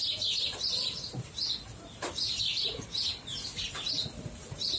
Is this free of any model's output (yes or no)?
yes